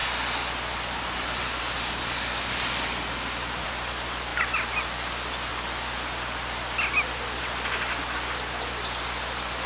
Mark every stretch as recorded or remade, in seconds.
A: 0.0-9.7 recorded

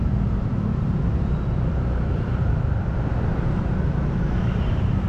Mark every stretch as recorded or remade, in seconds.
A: 0.0-3.3 remade; 3.3-4.6 recorded; 4.6-5.1 remade

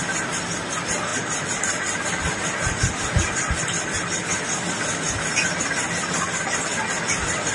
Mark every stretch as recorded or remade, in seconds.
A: 0.0-7.5 recorded